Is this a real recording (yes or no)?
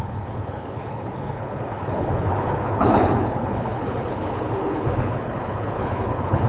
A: no